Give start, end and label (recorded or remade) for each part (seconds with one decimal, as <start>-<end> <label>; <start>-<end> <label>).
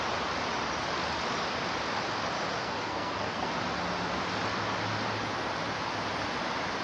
0.0-2.6 recorded; 2.6-3.5 remade; 3.5-6.8 recorded